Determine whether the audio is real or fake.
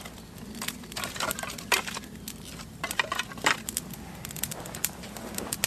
real